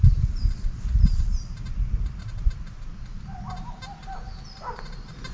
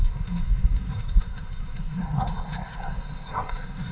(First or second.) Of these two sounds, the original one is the first